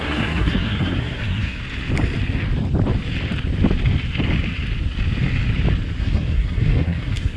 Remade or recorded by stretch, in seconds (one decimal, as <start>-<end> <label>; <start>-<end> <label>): 0.0-1.6 remade; 1.6-6.0 recorded; 6.0-7.4 remade